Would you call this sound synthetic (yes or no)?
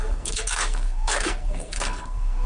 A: yes